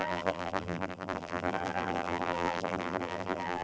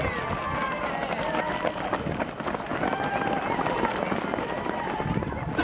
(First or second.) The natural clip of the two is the second